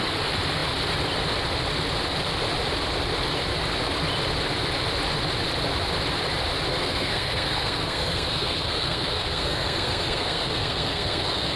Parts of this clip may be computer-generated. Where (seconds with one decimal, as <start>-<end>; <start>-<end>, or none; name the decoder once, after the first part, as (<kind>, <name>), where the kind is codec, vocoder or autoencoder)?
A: 6.7-11.6 (codec, SNAC)